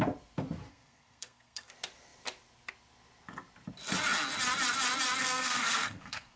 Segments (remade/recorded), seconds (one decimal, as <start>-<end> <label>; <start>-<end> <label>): 0.0-0.7 recorded; 0.7-1.7 remade; 1.7-5.2 recorded; 5.2-6.4 remade